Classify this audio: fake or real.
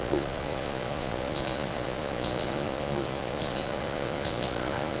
fake